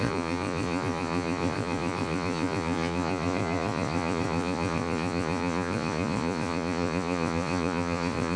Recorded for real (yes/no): no